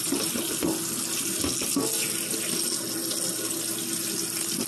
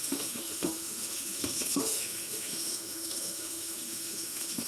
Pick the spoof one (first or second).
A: second